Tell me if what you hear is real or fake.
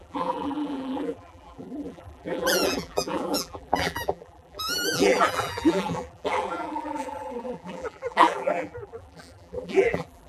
fake